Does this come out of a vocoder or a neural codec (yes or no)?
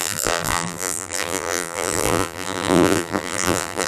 yes